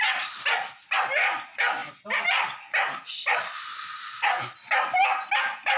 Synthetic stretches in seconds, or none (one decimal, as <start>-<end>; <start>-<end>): none